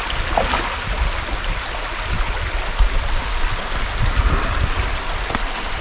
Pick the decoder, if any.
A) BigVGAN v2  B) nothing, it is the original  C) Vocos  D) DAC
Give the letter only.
B